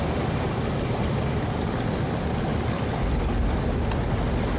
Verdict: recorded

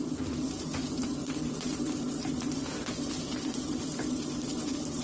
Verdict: remade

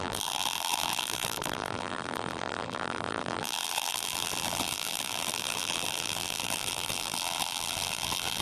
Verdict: remade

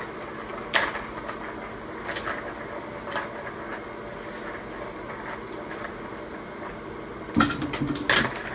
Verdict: recorded